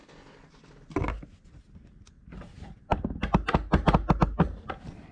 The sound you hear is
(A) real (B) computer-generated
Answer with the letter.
A